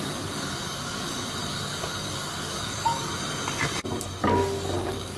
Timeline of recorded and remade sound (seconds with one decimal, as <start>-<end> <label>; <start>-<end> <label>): 0.0-3.1 remade; 3.1-4.2 recorded; 4.2-5.2 remade